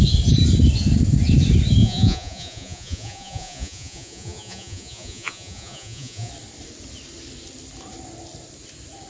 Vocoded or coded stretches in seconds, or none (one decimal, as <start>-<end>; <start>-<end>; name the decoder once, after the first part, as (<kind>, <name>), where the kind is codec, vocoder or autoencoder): 1.8-6.3 (vocoder, Vocos)